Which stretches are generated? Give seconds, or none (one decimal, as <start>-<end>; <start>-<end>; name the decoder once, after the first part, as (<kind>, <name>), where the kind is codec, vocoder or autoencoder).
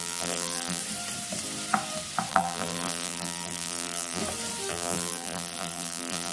0.0-0.8 (vocoder, BigVGAN v2); 2.3-4.2; 4.7-6.3